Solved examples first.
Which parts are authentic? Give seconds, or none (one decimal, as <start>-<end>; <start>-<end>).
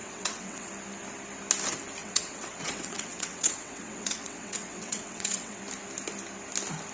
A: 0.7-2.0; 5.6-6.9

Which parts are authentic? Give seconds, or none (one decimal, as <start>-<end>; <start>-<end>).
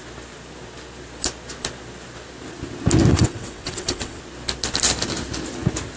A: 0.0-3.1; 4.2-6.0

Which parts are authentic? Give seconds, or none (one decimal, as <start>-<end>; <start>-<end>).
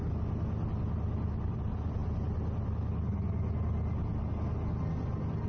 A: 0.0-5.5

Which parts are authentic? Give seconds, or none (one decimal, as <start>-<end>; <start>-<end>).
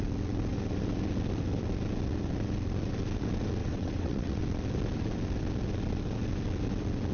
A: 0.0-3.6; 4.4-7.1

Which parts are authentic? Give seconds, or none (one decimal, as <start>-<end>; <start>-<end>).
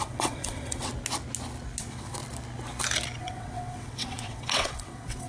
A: 0.9-1.8; 2.2-3.2